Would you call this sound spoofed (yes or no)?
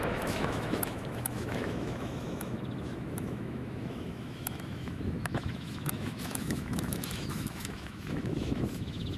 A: yes